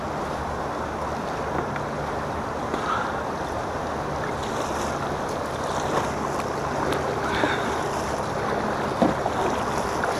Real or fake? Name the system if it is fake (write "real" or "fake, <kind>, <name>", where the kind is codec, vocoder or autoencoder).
real